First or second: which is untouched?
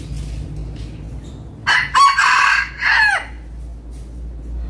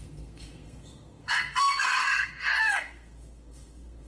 first